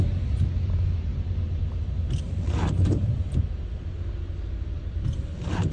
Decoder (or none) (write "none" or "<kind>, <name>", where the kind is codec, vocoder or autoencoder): none